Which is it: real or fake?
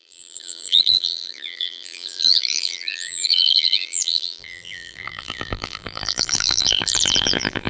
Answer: fake